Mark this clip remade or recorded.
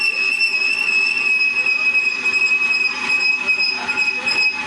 recorded